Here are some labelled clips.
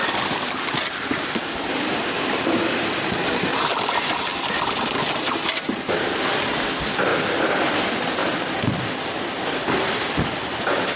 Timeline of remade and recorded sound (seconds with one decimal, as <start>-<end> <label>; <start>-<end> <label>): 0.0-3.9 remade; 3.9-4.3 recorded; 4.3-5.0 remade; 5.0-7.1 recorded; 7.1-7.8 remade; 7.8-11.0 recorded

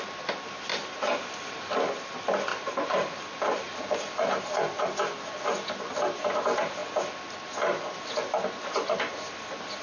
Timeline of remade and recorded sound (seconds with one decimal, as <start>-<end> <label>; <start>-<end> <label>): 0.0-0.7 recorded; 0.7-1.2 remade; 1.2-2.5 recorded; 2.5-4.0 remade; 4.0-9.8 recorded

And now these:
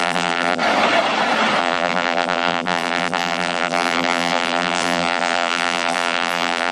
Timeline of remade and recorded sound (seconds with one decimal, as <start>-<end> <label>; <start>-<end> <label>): 0.0-0.6 remade; 0.6-1.6 recorded; 1.6-6.7 remade

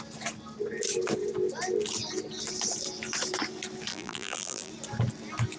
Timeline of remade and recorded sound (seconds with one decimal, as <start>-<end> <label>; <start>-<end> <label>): 0.0-3.9 recorded; 3.9-4.7 remade; 4.7-5.6 recorded

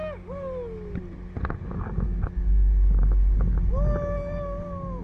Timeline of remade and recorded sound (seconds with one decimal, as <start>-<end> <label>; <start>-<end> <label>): 0.0-5.0 recorded

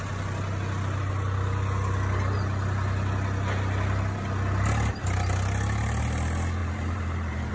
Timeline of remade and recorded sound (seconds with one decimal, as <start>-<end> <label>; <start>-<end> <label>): 0.0-6.6 recorded; 6.6-7.5 remade